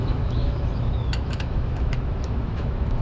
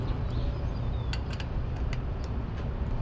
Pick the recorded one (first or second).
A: second